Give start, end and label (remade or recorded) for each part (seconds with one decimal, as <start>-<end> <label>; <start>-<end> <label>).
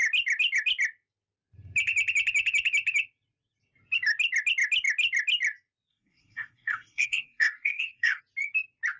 0.0-5.9 recorded; 5.9-8.2 remade; 8.2-9.0 recorded